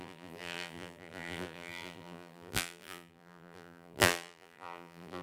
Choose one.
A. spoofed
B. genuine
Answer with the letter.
A